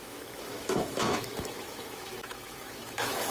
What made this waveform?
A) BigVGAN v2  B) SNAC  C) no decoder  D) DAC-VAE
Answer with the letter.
D